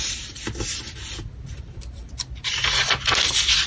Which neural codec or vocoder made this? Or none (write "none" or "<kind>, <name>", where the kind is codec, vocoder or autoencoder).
none